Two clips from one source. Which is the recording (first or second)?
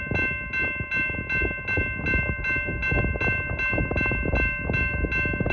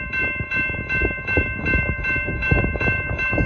first